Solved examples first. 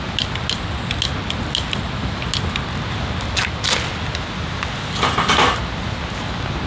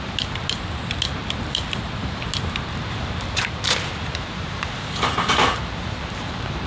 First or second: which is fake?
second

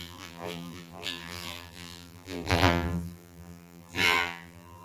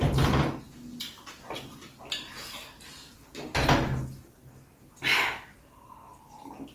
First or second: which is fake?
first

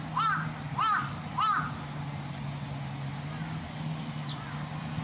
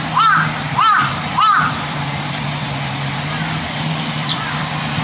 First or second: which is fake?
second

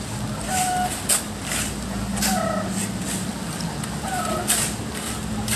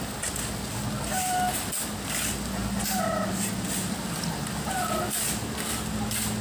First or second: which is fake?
first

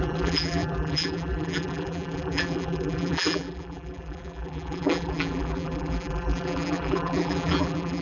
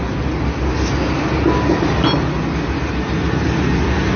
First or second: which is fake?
first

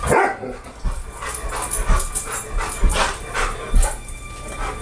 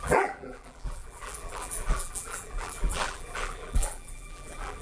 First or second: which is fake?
second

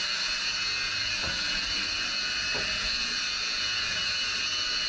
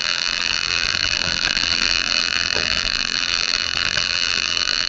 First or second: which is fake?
second